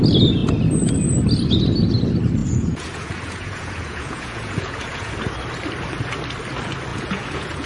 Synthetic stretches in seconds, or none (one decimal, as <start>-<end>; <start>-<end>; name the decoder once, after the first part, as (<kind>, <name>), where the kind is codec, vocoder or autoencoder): 2.4-5.1 (vocoder, Vocos); 6.9-7.7